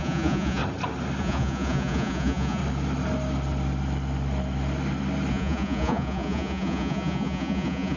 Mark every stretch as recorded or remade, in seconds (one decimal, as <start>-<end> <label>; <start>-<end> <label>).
0.0-0.6 remade; 0.6-1.2 recorded; 1.2-2.6 remade; 2.6-5.3 recorded; 5.3-8.0 remade